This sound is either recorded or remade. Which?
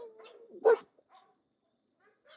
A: recorded